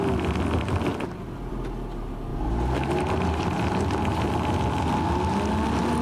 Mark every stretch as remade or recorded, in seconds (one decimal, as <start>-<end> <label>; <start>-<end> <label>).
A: 0.0-6.0 recorded